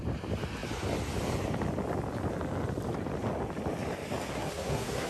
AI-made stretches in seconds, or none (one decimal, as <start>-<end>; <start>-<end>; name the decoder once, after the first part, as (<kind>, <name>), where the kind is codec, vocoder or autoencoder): 4.3-5.1 (codec, SNAC)

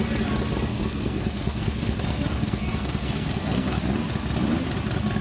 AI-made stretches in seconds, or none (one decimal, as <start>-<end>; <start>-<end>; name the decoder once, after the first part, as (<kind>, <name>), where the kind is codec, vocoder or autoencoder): 0.7-3.8 (codec, SNAC)

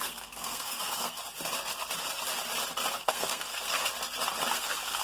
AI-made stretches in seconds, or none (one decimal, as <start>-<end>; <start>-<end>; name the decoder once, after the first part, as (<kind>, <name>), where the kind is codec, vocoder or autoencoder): 0.0-1.2 (codec, SNAC); 2.9-3.8; 4.5-5.0

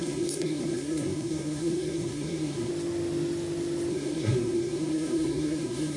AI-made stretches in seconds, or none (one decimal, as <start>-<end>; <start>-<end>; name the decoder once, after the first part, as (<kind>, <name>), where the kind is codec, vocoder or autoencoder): 0.0-2.7 (codec, SNAC); 3.9-6.0